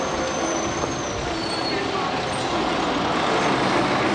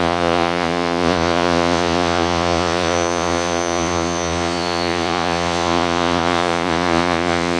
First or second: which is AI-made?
second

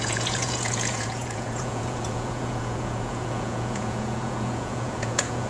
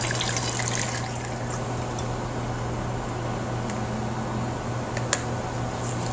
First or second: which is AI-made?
first